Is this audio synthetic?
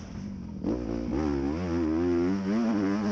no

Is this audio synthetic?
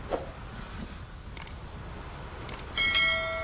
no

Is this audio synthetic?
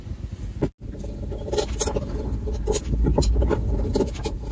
no